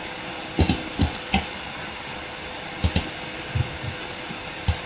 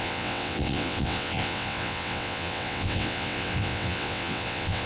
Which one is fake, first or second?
second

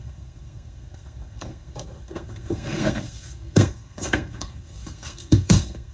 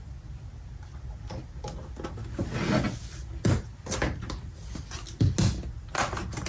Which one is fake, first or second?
first